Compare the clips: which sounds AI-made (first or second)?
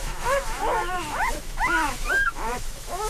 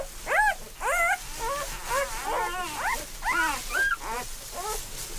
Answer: first